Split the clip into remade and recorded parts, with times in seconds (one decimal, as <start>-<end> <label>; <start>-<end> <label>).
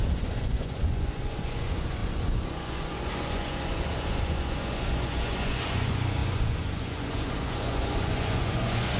0.0-9.0 remade